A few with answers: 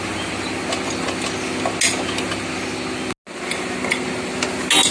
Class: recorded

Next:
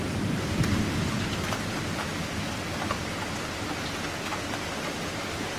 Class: recorded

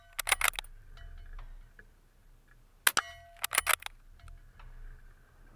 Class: recorded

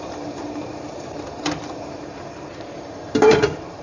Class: remade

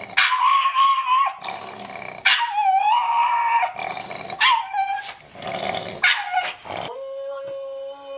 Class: recorded